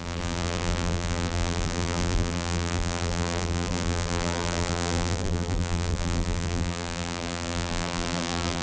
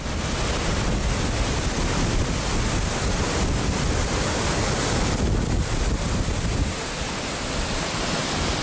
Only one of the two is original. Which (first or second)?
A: second